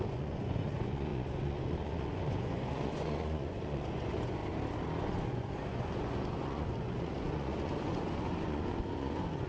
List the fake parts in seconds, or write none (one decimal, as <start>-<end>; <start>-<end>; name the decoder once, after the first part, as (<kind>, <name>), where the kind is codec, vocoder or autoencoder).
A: 0.0-4.4 (vocoder, Vocos); 5.0-9.5